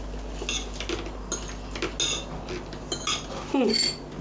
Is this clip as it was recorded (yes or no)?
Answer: yes